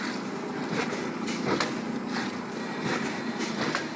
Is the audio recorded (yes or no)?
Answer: yes